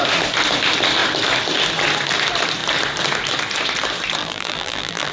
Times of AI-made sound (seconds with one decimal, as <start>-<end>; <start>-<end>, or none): 4.2-5.1